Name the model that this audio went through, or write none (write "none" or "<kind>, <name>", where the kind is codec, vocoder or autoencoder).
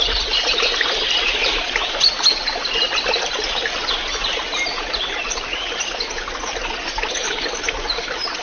none